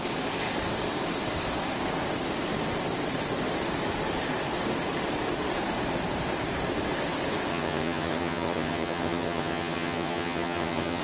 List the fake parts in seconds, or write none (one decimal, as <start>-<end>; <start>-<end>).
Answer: 7.5-11.0